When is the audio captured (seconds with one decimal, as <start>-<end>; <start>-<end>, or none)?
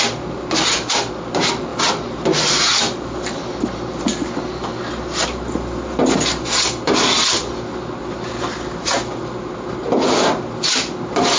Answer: 0.0-11.4